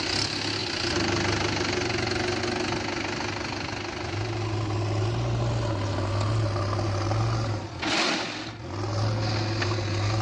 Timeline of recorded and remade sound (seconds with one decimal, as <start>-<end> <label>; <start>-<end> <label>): 0.0-10.2 recorded